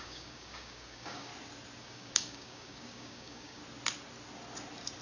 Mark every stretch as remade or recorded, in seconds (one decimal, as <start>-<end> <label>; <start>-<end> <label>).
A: 0.0-1.3 remade; 1.3-1.8 recorded; 1.8-3.6 remade; 3.6-5.0 recorded